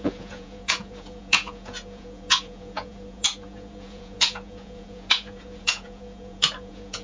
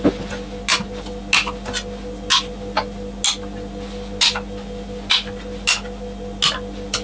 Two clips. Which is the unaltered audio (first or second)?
second